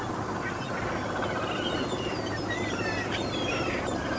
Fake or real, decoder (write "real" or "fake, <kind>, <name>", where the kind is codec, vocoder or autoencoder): fake, vocoder, BigVGAN v2